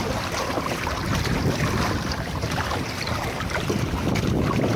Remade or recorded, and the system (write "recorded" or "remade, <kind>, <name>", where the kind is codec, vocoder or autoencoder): recorded